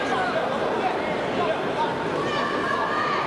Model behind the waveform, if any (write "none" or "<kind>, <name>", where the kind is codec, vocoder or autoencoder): none